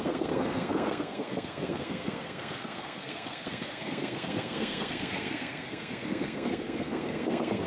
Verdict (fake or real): fake